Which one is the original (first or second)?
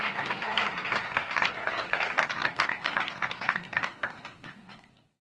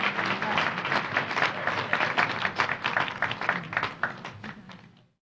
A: second